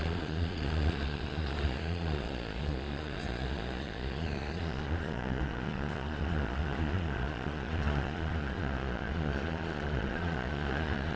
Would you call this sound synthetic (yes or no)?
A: yes